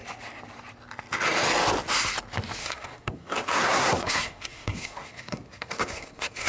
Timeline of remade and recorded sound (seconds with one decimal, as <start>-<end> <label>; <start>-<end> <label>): 0.0-2.6 recorded; 2.6-6.5 remade

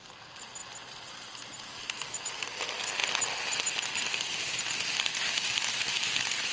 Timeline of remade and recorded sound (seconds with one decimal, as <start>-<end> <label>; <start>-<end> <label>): 0.0-6.5 recorded

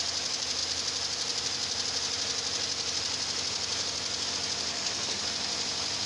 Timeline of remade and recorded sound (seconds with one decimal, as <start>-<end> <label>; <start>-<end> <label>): 0.0-4.7 recorded; 4.7-5.2 remade; 5.2-6.1 recorded

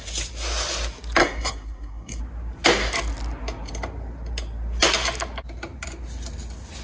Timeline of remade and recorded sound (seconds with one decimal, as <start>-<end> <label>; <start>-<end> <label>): 0.0-1.2 recorded; 1.2-2.2 remade; 2.2-6.8 recorded

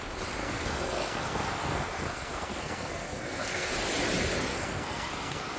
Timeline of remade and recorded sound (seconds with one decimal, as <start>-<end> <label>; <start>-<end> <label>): 0.0-0.4 recorded; 0.4-3.7 remade; 3.7-4.5 recorded; 4.5-5.6 remade

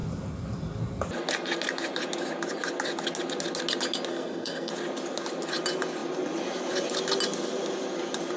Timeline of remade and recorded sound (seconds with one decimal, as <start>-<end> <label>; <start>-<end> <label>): 0.0-4.1 recorded; 4.1-4.7 remade; 4.7-8.4 recorded

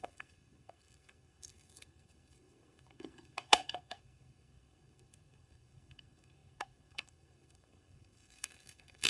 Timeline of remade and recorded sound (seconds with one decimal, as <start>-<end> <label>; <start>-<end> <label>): 0.0-9.1 remade